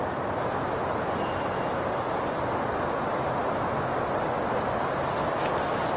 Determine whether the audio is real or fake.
real